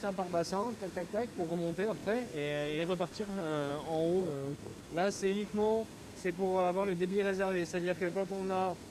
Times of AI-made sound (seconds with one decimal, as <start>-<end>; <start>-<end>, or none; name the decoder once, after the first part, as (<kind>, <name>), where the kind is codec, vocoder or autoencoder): 0.0-3.7 (codec, SNAC); 4.2-8.9